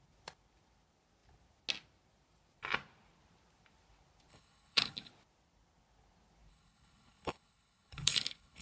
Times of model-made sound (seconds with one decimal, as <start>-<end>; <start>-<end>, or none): 4.3-5.1; 6.5-8.6